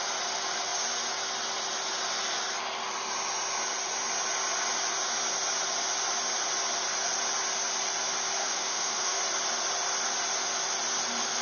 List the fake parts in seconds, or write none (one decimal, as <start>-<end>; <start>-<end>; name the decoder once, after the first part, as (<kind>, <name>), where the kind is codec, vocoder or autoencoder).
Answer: 8.4-9.2 (autoencoder, DAC-VAE)